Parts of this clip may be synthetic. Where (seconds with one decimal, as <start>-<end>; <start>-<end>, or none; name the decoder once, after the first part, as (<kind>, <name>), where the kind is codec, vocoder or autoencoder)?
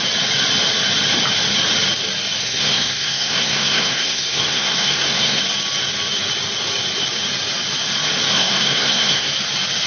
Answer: 2.4-5.4 (codec, SNAC); 8.3-9.3